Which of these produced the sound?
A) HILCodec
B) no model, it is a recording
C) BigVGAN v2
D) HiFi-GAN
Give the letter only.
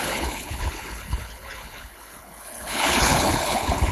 A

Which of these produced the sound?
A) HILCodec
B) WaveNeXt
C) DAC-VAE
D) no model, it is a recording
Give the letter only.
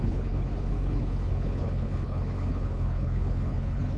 A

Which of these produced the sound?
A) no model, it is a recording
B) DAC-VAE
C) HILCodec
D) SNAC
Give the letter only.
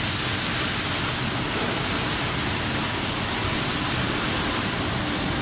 A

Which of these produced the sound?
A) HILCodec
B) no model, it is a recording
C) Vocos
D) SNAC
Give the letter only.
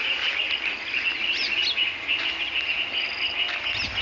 B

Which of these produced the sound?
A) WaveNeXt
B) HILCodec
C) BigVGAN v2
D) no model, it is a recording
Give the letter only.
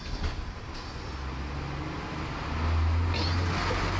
D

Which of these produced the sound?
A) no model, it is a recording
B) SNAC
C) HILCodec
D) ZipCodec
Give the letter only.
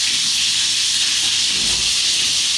A